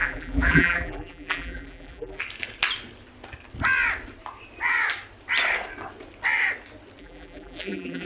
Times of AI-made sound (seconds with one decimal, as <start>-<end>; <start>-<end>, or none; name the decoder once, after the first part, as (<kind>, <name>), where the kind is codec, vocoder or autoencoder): 0.0-2.2 (vocoder, BigVGAN v2); 7.0-8.1